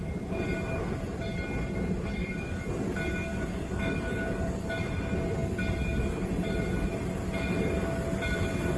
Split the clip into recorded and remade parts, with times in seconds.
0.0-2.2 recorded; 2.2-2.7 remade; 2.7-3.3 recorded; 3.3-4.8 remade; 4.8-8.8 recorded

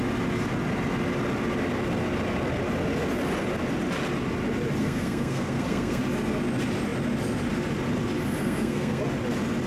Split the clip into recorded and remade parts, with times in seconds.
0.0-4.8 recorded; 4.8-6.0 remade; 6.0-8.4 recorded; 8.4-9.0 remade; 9.0-9.7 recorded